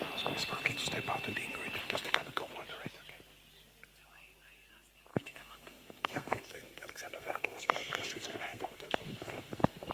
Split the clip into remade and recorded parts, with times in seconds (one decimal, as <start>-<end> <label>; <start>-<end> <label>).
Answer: 0.0-1.8 recorded; 1.8-2.5 remade; 2.5-5.1 recorded; 5.1-9.9 remade